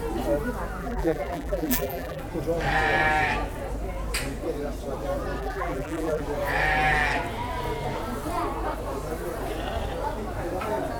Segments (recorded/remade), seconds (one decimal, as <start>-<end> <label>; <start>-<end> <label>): 0.0-0.8 recorded; 0.8-2.2 remade; 2.2-5.4 recorded; 5.4-6.2 remade; 6.2-11.0 recorded